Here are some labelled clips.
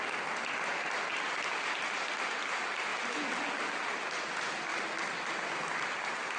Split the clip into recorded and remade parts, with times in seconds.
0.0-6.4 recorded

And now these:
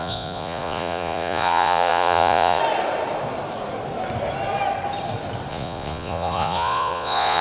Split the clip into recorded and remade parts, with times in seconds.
0.0-2.6 remade; 2.6-5.5 recorded; 5.5-7.4 remade

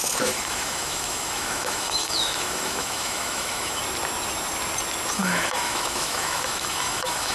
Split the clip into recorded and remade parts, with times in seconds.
0.0-3.8 remade; 3.8-5.1 recorded; 5.1-7.3 remade

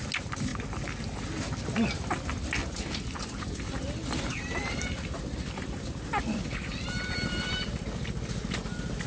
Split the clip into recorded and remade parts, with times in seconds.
0.0-2.6 recorded; 2.6-7.8 remade; 7.8-9.1 recorded

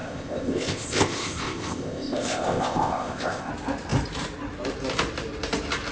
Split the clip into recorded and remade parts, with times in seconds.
0.0-3.5 remade; 3.5-5.9 recorded

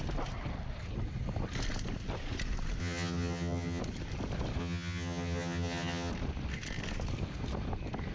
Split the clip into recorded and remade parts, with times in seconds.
0.0-2.8 recorded; 2.8-3.8 remade; 3.8-4.6 recorded; 4.6-6.1 remade; 6.1-8.1 recorded

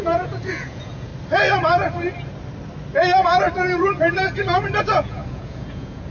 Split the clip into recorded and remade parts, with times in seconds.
0.0-1.1 remade; 1.1-4.8 recorded; 4.8-6.1 remade

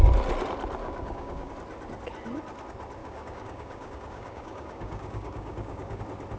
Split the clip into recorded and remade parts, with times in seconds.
0.0-0.8 recorded; 0.8-1.5 remade; 1.5-3.0 recorded; 3.0-6.0 remade; 6.0-6.4 recorded